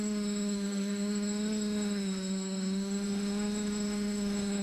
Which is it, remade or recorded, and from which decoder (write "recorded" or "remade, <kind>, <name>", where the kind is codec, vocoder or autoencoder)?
remade, autoencoder, DAC-VAE